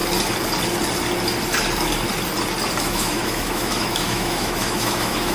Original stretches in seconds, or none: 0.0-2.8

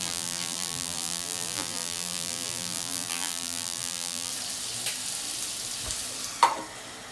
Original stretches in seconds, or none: 4.3-7.1